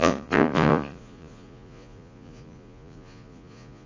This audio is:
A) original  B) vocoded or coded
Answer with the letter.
B